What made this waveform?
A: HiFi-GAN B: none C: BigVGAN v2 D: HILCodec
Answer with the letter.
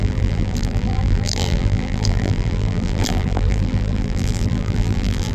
C